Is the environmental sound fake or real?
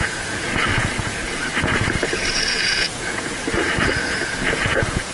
fake